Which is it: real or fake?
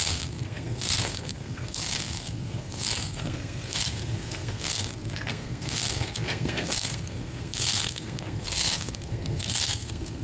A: fake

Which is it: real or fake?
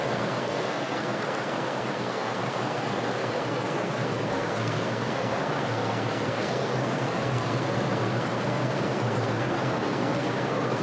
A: fake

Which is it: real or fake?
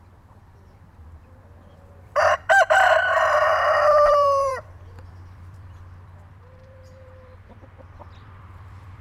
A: fake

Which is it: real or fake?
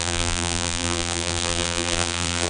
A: fake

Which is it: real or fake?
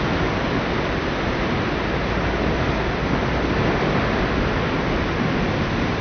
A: real